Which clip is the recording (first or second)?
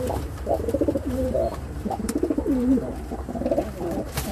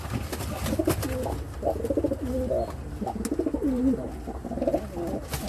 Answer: second